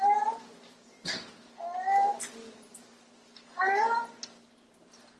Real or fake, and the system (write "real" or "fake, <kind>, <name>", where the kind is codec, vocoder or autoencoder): real